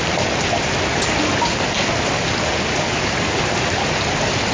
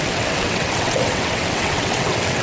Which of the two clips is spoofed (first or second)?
second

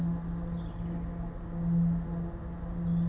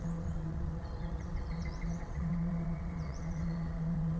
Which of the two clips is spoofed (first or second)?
second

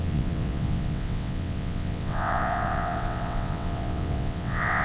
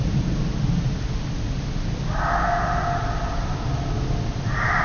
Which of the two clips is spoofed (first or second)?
first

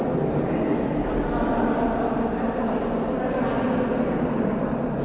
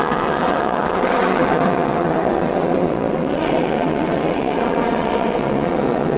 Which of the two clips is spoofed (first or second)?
second